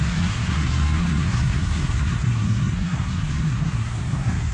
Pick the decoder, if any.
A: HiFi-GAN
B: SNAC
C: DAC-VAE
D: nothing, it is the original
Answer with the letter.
B